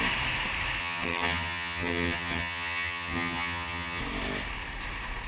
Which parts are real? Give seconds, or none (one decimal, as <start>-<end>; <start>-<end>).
0.0-0.8; 4.0-5.3